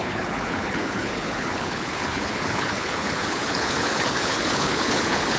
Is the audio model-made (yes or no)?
yes